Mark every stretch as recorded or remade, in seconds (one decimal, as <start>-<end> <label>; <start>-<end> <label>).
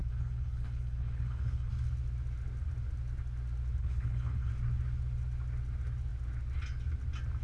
0.0-1.7 remade; 1.7-3.8 recorded; 3.8-4.5 remade; 4.5-7.4 recorded